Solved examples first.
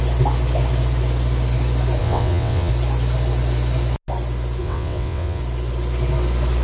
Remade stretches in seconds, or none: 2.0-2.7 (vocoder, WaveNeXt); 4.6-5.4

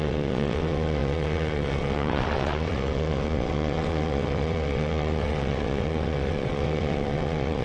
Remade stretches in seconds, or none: 0.0-7.6 (vocoder, WaveNeXt)

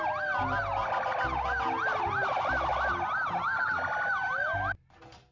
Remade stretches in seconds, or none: none

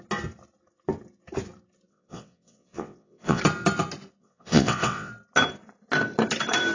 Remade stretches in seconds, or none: 1.9-3.4 (vocoder, WaveNeXt); 4.2-5.1

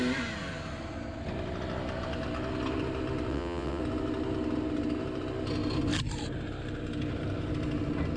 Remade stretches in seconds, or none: 3.3-3.8 (vocoder, WaveNeXt)

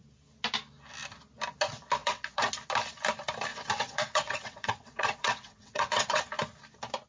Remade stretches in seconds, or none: 2.0-2.5 (vocoder, WaveNeXt); 3.5-6.2

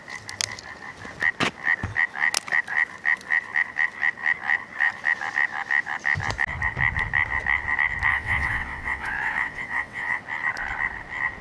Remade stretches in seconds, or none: 8.1-10.2 (vocoder, WaveNeXt)

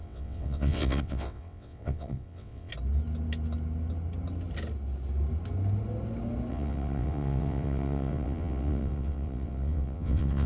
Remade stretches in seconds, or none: 0.0-2.7 (vocoder, WaveNeXt); 6.5-10.5